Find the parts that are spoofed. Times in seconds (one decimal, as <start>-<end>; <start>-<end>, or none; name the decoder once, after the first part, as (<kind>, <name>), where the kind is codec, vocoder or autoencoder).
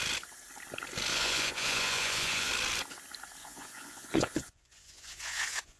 1.1-2.5 (vocoder, Vocos); 3.4-5.8